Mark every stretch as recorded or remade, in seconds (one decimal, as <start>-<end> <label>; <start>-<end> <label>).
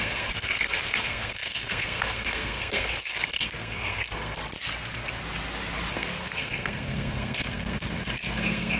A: 0.0-4.4 remade; 4.4-5.9 recorded; 5.9-8.8 remade